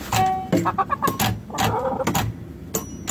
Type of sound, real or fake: real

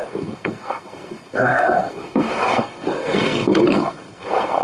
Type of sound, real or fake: fake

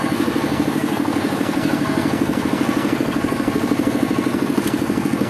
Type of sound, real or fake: fake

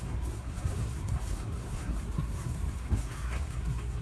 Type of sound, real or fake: fake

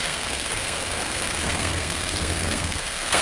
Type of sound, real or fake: fake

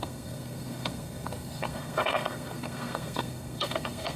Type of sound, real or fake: fake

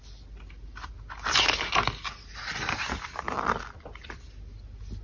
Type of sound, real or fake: real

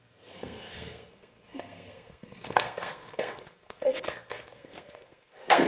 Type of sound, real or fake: fake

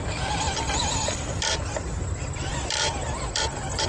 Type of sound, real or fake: real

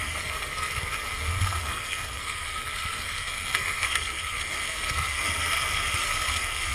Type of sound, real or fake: fake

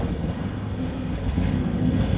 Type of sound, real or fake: fake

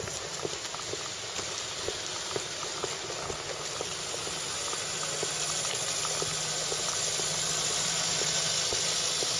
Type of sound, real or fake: real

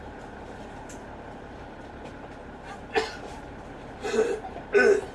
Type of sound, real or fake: real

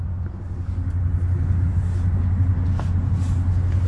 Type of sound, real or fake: real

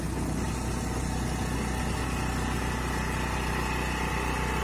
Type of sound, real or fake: real